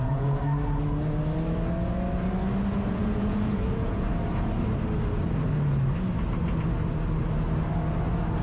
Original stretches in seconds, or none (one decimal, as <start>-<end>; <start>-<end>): 0.4-2.9; 4.1-8.4